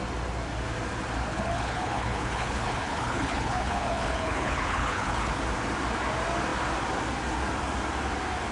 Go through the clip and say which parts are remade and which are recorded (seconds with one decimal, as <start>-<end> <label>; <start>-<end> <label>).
0.0-1.3 recorded; 1.3-5.4 remade; 5.4-8.5 recorded